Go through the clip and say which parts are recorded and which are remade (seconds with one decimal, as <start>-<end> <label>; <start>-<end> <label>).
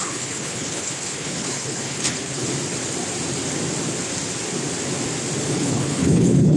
0.0-2.5 remade; 2.5-5.5 recorded; 5.5-6.6 remade